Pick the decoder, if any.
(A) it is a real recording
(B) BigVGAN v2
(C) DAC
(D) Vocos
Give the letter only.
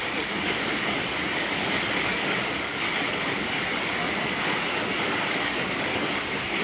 C